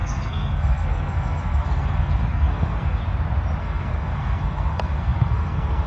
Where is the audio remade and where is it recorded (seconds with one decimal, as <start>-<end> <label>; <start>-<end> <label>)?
0.0-3.0 remade; 3.0-3.6 recorded; 3.6-5.9 remade